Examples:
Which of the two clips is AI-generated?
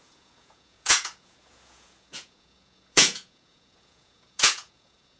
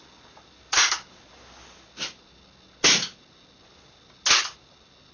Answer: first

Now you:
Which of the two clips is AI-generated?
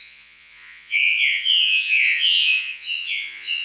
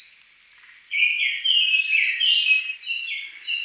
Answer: first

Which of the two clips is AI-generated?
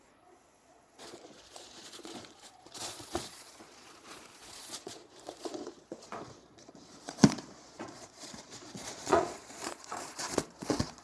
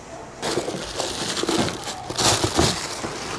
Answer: first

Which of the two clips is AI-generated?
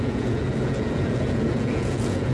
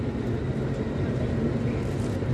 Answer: first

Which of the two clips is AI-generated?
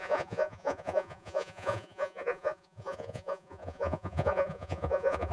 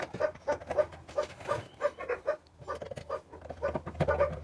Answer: first